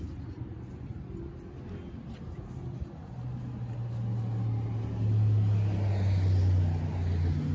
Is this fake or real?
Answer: real